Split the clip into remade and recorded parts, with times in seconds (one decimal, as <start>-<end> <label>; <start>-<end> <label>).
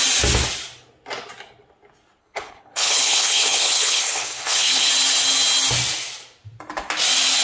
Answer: 0.0-2.2 recorded; 2.2-4.9 remade; 4.9-7.4 recorded